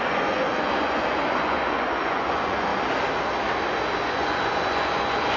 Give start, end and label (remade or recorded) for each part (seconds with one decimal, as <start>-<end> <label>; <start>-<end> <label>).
0.0-2.7 remade; 2.7-4.0 recorded; 4.0-5.4 remade